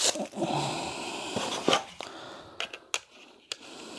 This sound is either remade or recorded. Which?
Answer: recorded